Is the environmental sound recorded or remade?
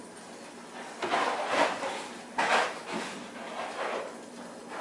recorded